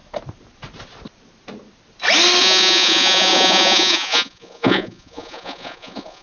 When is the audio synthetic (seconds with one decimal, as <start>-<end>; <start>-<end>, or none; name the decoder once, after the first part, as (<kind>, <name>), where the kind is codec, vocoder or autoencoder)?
2.4-6.2 (vocoder, Vocos)